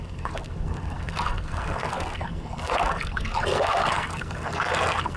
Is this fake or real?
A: fake